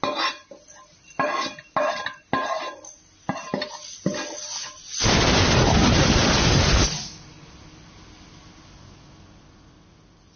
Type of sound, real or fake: real